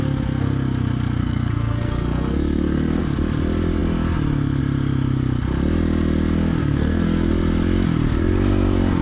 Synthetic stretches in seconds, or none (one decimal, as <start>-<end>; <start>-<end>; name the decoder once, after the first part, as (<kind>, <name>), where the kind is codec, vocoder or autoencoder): 1.2-3.0 (codec, SNAC); 6.6-7.3